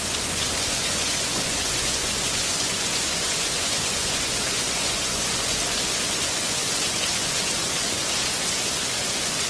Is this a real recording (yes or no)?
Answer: no